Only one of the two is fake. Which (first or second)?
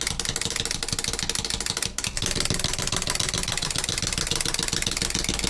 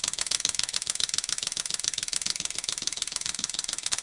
second